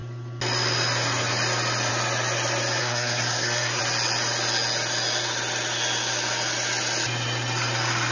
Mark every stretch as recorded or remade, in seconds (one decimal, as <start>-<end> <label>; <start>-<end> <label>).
0.0-2.8 recorded; 2.8-3.8 remade; 3.8-8.1 recorded